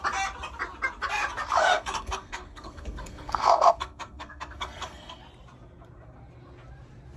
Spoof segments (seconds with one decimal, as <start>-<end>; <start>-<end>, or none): 1.6-5.2